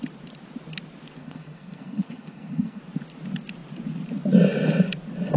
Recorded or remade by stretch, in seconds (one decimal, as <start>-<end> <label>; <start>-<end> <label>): 0.0-1.2 recorded; 1.2-2.8 remade; 2.8-5.4 recorded